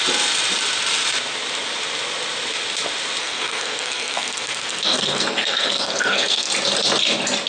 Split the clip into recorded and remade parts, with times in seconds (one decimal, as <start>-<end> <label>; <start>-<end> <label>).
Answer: 0.0-3.2 recorded; 3.2-6.5 remade; 6.5-7.5 recorded